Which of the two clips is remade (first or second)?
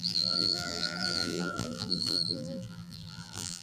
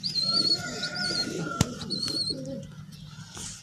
first